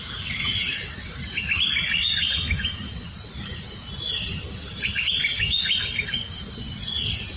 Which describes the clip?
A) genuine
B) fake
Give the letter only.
A